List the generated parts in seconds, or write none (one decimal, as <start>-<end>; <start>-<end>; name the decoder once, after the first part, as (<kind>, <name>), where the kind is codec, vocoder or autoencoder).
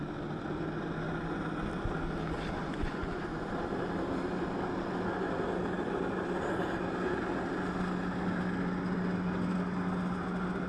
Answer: 2.6-3.2 (vocoder, Vocos)